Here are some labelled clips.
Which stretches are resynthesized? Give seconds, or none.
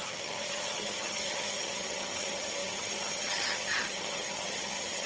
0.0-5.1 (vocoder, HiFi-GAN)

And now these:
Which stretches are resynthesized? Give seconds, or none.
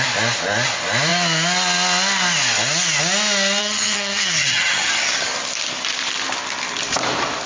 3.6-4.9 (vocoder, HiFi-GAN)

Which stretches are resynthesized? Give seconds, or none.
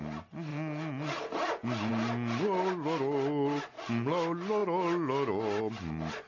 none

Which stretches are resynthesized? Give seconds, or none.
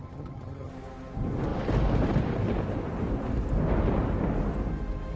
0.0-0.7 (vocoder, HiFi-GAN)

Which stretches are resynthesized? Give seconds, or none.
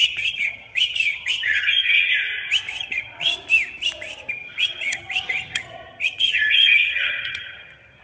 0.0-2.1 (vocoder, HiFi-GAN); 2.8-3.3; 4.3-8.0